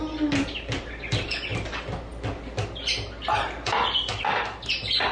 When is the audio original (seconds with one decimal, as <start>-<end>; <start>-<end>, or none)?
0.0-5.1